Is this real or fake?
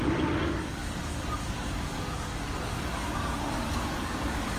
fake